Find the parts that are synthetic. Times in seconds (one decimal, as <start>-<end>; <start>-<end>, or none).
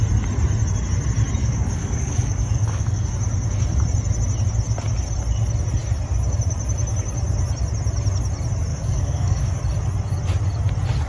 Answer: 1.4-3.1; 8.7-9.6